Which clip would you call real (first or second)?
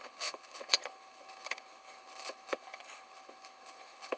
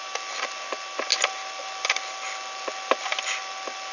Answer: second